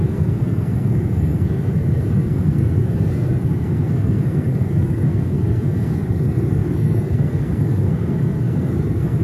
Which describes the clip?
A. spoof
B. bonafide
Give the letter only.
A